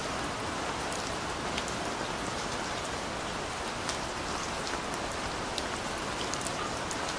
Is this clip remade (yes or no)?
no